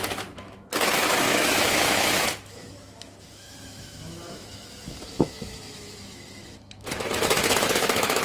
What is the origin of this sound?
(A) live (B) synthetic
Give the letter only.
B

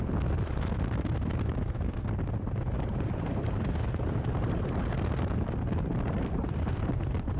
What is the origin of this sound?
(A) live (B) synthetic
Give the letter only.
A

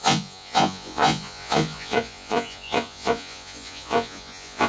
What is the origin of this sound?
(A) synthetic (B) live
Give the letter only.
A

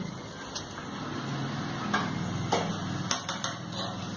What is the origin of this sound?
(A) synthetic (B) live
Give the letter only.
B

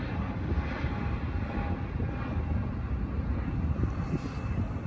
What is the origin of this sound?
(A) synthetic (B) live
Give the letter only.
B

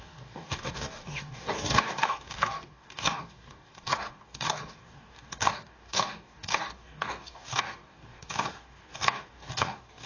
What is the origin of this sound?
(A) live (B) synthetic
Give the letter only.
B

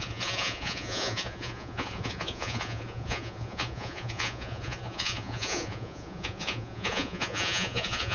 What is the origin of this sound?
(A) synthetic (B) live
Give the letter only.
A